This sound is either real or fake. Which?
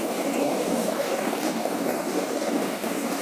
fake